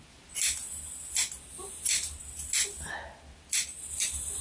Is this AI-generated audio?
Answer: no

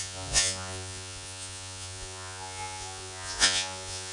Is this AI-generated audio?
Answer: yes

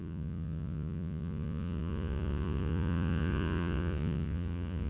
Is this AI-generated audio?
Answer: yes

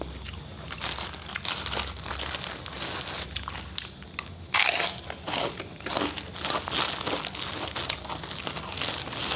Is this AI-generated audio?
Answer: no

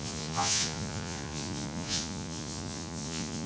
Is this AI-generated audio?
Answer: yes